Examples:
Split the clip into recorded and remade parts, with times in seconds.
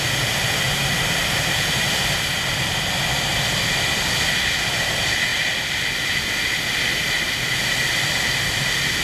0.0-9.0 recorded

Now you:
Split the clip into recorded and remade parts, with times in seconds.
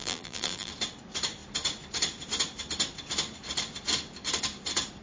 0.0-0.7 remade; 0.7-5.0 recorded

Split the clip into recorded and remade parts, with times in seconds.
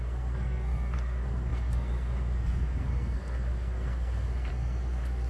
0.0-5.3 remade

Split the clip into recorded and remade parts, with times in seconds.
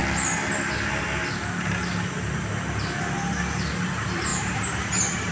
0.0-4.3 recorded; 4.3-5.3 remade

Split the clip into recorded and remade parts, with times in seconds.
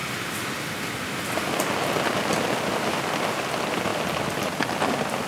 0.0-5.3 recorded